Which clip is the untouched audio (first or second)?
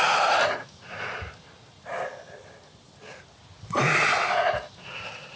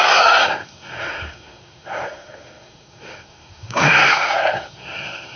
first